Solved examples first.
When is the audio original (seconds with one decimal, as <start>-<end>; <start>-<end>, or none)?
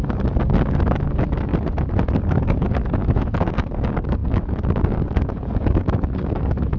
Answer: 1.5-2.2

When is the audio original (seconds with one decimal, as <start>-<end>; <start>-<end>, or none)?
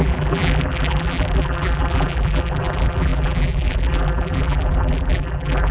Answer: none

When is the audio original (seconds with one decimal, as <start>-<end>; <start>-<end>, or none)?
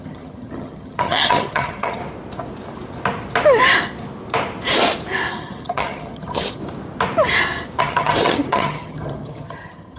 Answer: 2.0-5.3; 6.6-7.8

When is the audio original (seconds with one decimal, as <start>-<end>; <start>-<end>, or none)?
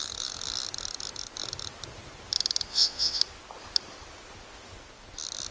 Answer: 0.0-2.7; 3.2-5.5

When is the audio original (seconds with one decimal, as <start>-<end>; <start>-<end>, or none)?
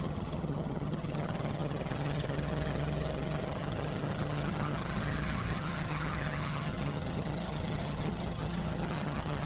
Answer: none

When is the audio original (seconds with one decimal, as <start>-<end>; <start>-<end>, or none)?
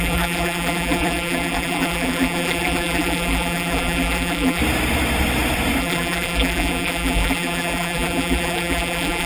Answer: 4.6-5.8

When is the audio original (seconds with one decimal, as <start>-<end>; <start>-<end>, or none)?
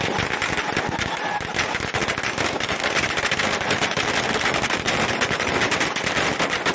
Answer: 0.0-6.7